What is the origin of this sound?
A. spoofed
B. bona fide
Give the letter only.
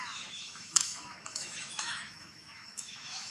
A